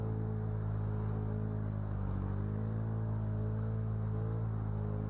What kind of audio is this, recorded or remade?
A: recorded